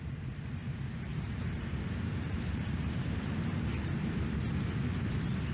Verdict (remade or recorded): remade